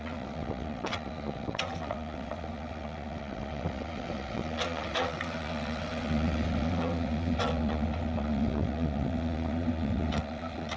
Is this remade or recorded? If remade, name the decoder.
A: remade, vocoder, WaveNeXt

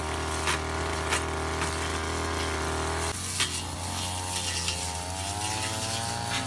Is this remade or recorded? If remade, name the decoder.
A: recorded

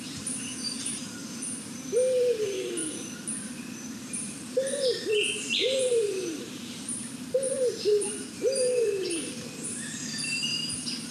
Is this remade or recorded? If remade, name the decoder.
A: remade, vocoder, BigVGAN v2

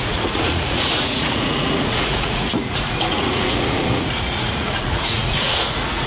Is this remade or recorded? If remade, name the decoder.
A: remade, vocoder, Vocos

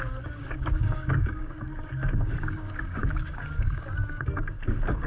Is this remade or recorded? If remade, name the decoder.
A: remade, codec, DAC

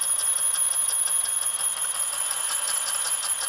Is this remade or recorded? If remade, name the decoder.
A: recorded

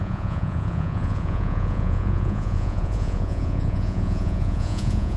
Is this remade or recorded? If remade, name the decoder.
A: remade, vocoder, Vocos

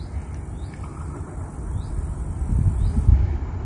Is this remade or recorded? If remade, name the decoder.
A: recorded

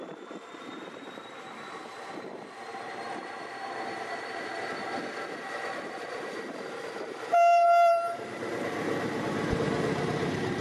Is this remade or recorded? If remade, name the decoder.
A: remade, vocoder, BigVGAN v2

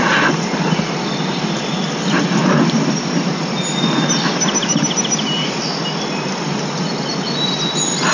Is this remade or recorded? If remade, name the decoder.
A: recorded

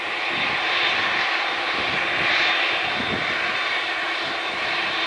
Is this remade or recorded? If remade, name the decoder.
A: recorded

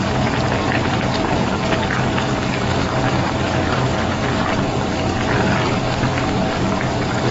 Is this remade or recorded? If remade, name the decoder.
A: remade, codec, DAC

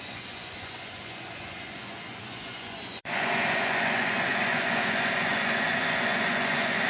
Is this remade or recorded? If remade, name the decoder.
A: remade, vocoder, Vocos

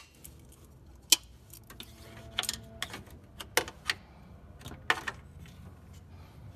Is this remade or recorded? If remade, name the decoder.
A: recorded